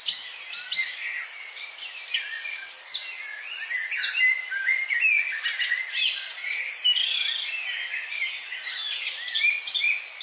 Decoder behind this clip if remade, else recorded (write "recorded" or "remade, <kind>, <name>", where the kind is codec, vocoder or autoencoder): recorded